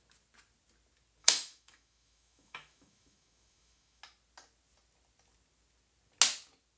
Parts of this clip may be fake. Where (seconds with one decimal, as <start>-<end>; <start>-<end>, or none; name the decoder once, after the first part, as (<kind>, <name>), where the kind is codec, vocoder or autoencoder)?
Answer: 1.2-4.0 (autoencoder, DAC-VAE)